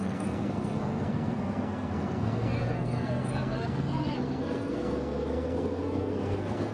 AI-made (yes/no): yes